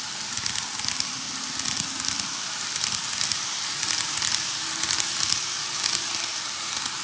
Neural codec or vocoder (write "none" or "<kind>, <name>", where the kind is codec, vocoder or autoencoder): none